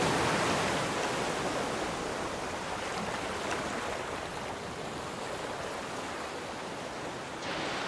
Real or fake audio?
real